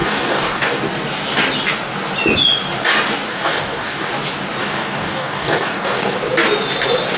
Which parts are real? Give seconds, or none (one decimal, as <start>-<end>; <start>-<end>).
0.8-3.3; 4.1-4.6; 6.2-7.2

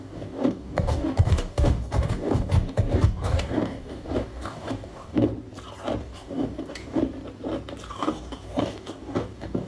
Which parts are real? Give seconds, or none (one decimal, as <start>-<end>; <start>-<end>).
5.3-6.0; 7.0-7.9

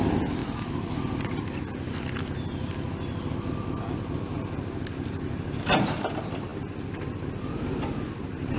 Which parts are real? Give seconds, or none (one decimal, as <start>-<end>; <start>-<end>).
0.0-8.6

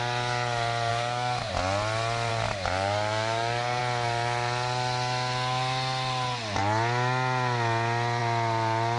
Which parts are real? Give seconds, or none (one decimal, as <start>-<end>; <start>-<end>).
0.0-0.9; 1.5-2.3; 3.8-9.0

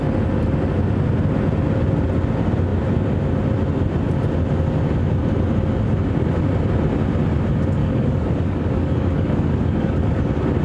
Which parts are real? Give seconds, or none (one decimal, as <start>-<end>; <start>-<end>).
0.0-7.8; 10.2-10.6